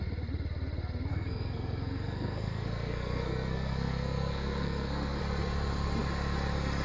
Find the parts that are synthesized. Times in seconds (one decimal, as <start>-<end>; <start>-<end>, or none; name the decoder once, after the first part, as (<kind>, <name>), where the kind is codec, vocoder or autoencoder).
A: 1.1-5.2 (codec, SNAC)